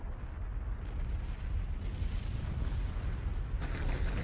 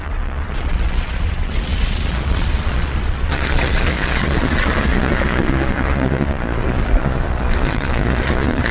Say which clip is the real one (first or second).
first